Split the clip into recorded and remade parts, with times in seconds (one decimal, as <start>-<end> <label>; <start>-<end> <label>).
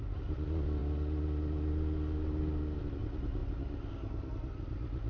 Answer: 0.0-5.1 recorded